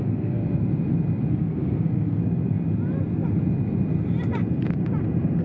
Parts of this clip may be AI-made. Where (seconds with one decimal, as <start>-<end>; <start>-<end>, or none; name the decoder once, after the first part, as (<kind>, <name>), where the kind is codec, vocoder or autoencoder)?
0.0-0.4 (codec, SNAC); 1.3-2.2